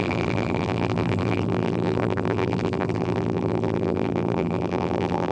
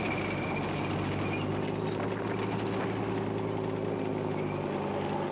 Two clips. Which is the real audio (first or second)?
second